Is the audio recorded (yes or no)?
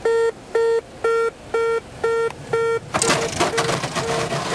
yes